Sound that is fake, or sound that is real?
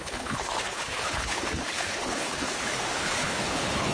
fake